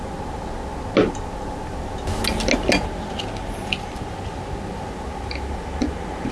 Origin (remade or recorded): recorded